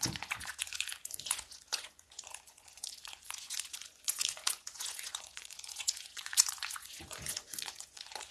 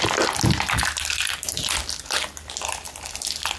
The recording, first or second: second